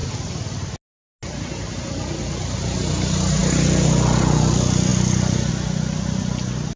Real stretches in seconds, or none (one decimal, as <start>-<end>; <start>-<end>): 0.0-6.8